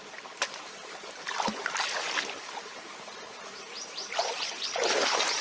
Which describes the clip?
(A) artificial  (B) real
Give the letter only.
B